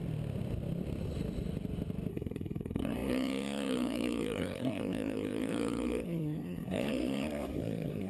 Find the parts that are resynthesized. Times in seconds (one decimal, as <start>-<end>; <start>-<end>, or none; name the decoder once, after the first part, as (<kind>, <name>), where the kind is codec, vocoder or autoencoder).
2.1-8.1 (codec, SNAC)